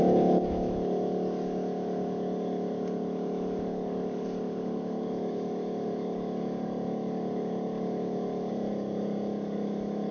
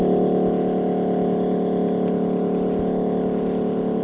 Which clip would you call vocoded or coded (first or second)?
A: first